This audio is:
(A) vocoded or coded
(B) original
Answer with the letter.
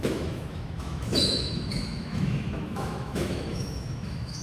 A